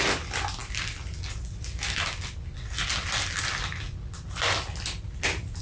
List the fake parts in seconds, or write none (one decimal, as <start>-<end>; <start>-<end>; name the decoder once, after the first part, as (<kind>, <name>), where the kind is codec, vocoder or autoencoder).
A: none